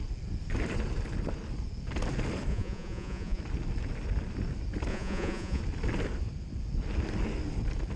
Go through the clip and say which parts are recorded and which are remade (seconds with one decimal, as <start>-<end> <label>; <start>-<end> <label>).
0.0-2.5 recorded; 2.5-3.4 remade; 3.4-4.9 recorded; 4.9-5.6 remade; 5.6-8.0 recorded